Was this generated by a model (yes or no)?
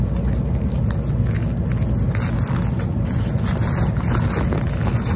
no